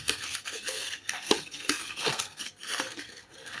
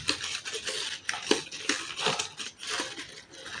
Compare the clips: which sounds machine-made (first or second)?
first